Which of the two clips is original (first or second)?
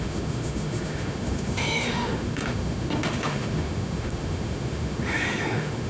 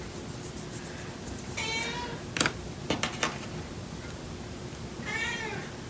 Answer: second